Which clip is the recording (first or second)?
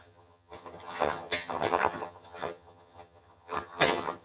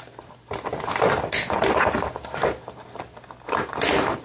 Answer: second